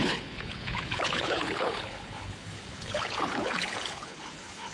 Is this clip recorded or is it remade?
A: remade